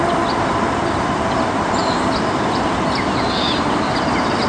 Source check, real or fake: fake